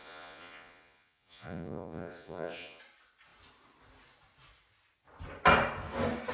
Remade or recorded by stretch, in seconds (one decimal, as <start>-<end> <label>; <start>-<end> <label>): 0.0-2.8 remade; 2.8-6.3 recorded